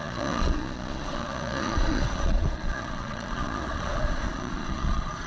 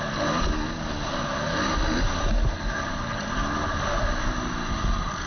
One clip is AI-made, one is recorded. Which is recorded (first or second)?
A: second